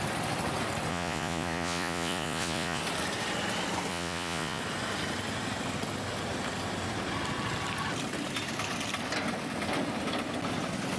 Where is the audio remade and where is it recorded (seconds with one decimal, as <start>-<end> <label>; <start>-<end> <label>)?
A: 0.0-0.9 recorded; 0.9-2.8 remade; 2.8-3.9 recorded; 3.9-4.6 remade; 4.6-11.0 recorded